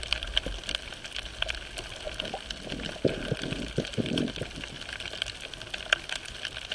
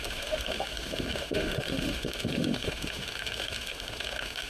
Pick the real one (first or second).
first